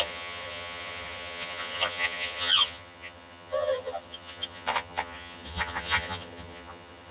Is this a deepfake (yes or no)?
yes